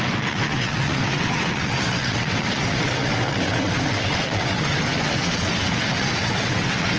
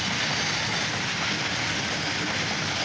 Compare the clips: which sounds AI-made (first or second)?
first